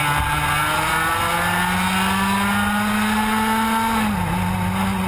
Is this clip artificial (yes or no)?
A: no